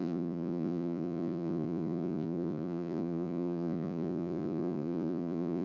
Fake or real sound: fake